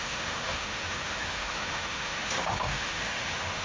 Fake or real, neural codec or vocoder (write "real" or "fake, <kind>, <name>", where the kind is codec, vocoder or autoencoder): fake, autoencoder, DAC-VAE